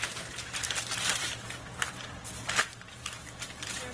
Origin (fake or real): fake